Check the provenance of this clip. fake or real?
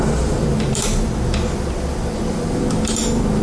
real